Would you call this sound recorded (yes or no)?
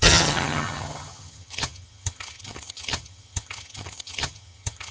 no